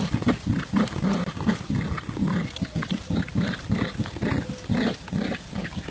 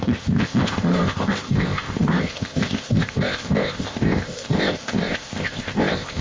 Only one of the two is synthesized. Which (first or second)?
second